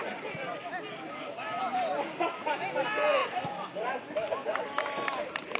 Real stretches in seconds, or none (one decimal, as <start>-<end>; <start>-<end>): 0.5-1.6